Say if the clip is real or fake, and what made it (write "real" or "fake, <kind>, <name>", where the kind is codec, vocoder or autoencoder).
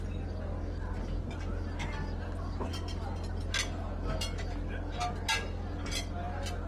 real